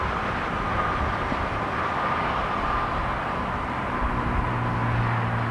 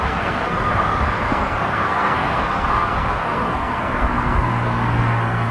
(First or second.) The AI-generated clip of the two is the second